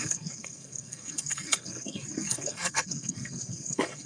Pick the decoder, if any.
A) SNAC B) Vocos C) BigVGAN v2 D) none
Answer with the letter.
A